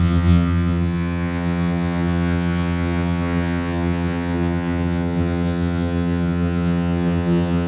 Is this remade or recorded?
remade